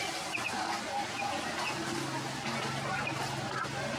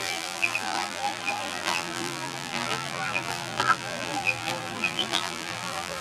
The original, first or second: first